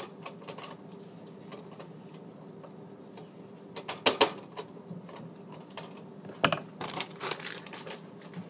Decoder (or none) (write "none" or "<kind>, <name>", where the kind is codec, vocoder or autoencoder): none